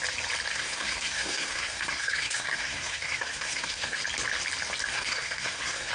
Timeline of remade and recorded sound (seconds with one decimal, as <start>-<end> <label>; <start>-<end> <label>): 0.0-0.5 recorded; 0.5-4.0 remade; 4.0-4.9 recorded; 4.9-5.9 remade